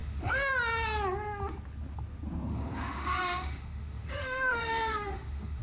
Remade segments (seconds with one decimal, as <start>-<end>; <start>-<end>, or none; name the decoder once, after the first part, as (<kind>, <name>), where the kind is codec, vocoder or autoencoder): 0.0-0.5 (autoencoder, DAC-VAE); 2.5-5.6